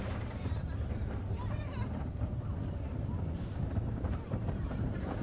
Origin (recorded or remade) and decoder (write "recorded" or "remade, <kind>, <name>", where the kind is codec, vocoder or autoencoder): remade, vocoder, BigVGAN v2